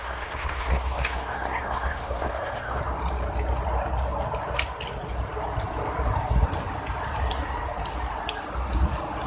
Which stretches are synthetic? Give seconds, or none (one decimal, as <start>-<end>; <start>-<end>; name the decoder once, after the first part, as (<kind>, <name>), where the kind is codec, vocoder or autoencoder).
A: 0.0-2.8 (codec, SNAC)